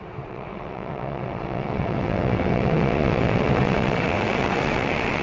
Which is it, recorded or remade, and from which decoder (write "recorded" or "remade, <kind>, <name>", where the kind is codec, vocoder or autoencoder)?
remade, vocoder, WaveNeXt